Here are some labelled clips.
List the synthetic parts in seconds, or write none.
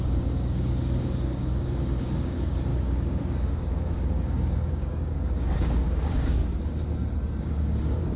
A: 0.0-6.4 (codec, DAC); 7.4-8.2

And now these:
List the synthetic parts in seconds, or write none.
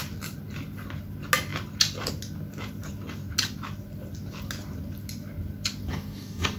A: 5.9-6.6 (codec, DAC)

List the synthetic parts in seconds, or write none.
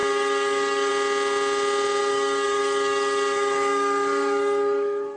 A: 0.0-0.9 (codec, DAC); 2.0-5.2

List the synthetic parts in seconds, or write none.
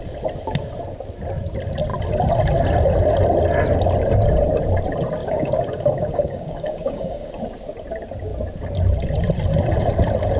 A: 5.2-7.3 (codec, DAC)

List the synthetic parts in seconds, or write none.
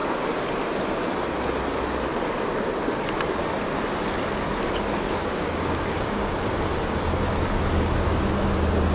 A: 5.2-6.4 (codec, DAC)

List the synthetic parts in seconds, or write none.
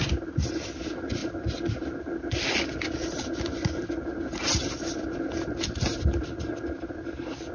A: none